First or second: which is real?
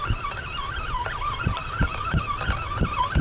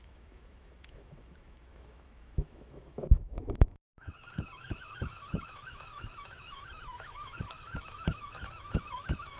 first